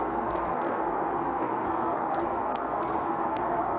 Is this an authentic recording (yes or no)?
no